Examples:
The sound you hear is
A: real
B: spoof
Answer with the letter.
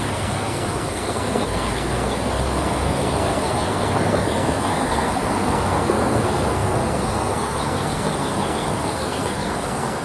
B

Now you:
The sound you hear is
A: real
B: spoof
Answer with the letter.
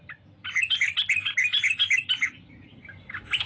A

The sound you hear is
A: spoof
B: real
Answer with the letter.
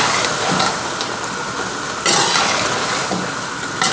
B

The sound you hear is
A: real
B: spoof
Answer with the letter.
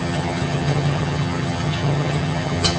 B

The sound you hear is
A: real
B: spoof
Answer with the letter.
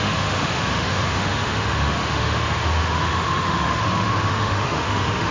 B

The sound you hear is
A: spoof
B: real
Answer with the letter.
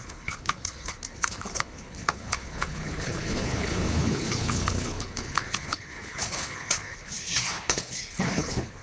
A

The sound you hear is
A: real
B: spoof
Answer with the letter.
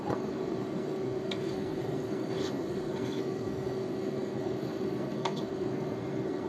B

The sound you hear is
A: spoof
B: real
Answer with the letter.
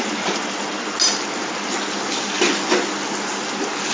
B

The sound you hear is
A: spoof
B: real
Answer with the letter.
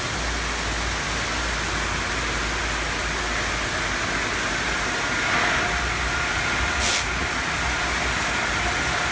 B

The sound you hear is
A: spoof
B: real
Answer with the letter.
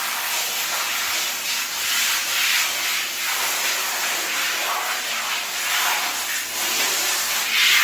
B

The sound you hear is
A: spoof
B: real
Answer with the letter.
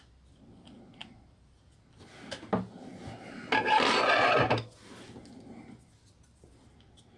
B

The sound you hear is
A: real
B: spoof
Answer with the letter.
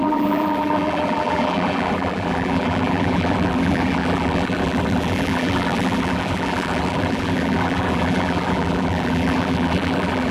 B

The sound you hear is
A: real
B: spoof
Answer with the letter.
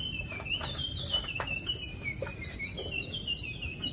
A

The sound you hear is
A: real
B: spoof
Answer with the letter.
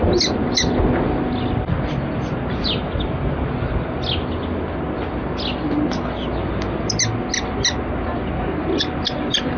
A